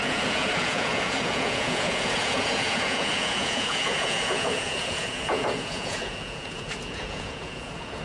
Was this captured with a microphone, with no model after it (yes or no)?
no